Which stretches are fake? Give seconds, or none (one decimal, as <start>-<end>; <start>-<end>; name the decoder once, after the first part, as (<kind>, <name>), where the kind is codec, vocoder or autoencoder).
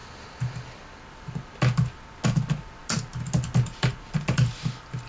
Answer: none